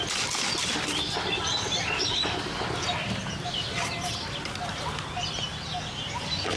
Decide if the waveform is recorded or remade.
recorded